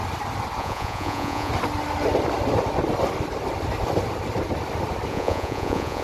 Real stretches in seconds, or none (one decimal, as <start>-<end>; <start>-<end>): 0.0-0.6; 1.5-5.1